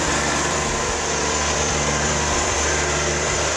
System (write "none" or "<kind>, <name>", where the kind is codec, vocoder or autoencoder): vocoder, BigVGAN v2